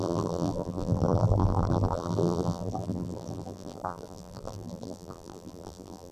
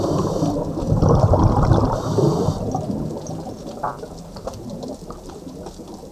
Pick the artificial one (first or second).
first